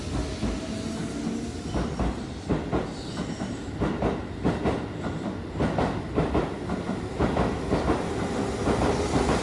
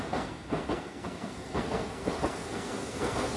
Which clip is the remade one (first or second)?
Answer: second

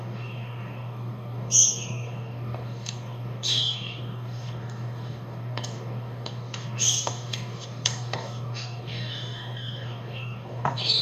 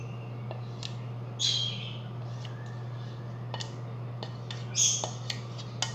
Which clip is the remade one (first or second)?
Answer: first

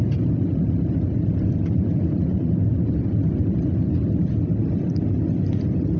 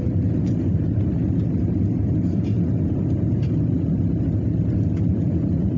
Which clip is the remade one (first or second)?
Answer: first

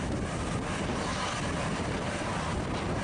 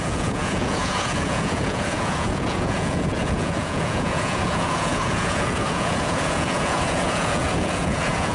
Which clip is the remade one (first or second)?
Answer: second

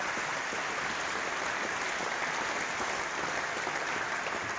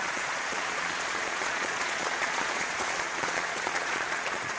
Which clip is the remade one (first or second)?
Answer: second